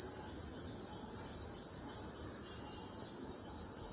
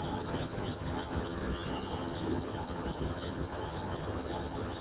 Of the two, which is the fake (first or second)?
second